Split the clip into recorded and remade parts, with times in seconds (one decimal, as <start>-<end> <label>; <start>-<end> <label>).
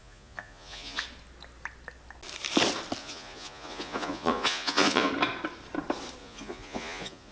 0.0-1.0 remade; 1.0-3.0 recorded; 3.0-5.1 remade; 5.1-6.2 recorded; 6.2-7.3 remade